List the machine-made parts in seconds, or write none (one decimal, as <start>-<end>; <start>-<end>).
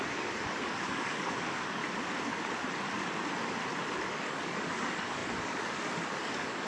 0.0-1.8; 4.1-6.7